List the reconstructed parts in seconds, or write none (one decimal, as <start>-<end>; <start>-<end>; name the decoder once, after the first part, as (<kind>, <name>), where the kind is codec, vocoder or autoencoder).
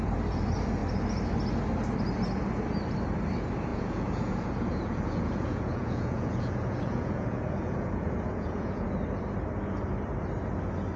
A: 3.7-8.9 (vocoder, Vocos)